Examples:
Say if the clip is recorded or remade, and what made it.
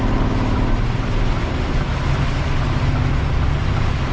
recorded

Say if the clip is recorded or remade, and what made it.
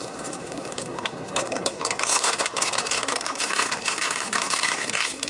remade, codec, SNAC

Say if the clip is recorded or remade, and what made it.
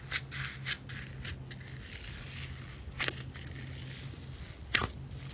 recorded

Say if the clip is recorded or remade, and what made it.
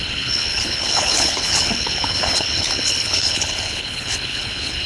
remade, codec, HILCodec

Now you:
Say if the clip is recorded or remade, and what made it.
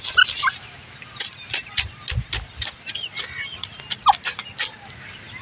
recorded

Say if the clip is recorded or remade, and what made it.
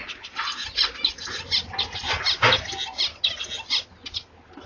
recorded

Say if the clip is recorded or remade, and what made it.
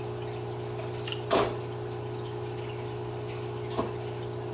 recorded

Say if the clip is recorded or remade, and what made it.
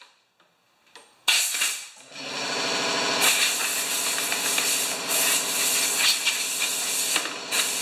recorded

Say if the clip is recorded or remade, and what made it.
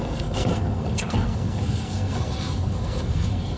remade, codec, SNAC